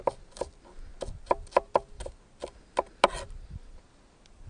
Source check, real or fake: real